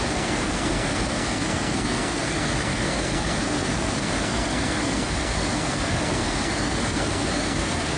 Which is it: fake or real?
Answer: fake